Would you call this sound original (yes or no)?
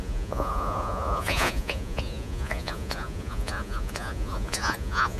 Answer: no